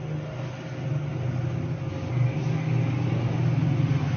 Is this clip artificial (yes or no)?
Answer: no